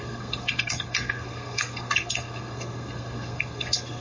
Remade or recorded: remade